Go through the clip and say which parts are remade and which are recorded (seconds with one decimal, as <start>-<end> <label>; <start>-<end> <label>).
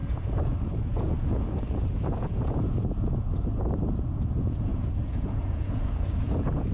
0.0-6.7 remade